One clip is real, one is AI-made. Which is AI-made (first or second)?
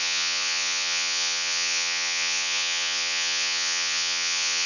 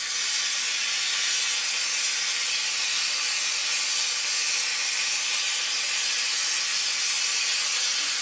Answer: first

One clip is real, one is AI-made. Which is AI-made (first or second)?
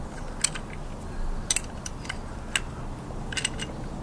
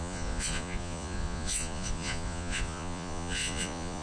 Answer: second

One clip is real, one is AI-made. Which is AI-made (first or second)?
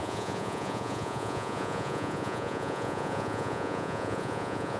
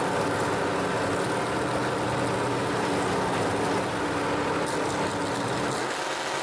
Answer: first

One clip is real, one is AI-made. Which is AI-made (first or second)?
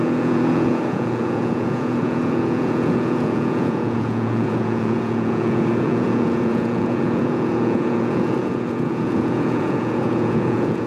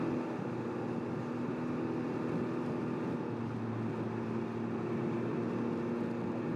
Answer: first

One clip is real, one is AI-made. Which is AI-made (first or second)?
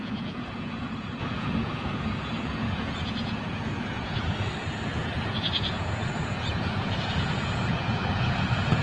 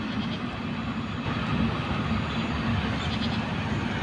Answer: first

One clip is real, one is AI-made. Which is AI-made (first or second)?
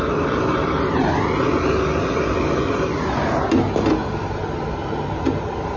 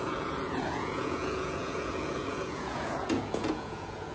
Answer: second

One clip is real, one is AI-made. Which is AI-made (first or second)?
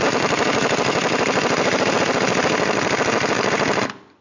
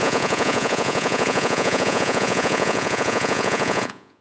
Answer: second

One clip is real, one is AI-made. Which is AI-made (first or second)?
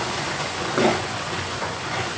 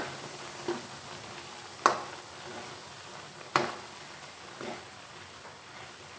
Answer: first